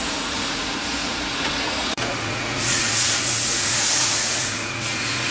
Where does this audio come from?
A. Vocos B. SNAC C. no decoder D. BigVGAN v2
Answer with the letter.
A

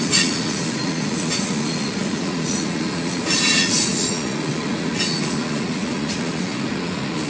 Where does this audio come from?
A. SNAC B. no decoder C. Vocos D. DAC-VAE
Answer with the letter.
C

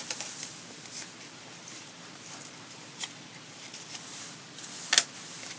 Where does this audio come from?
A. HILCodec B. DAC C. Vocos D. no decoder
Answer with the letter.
D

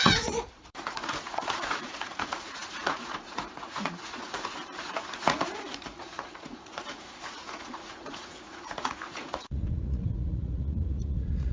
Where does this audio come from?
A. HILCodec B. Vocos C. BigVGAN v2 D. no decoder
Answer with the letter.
B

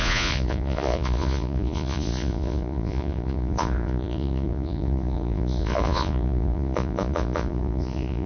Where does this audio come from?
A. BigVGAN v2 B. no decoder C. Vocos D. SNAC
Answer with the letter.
C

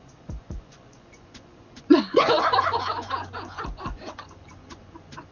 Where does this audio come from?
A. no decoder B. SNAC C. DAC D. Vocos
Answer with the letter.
D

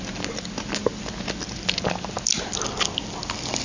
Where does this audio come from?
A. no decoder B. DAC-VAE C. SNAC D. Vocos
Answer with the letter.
A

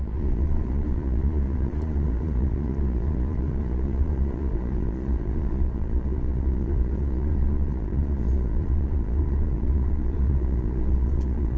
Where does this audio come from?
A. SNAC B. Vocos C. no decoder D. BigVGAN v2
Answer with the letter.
B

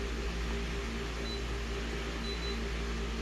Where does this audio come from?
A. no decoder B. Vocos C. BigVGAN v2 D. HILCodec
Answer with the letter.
A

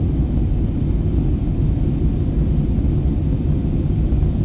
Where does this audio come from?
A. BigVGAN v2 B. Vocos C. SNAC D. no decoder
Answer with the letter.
D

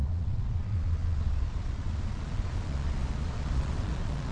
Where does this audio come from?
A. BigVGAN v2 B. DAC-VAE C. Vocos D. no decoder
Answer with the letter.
C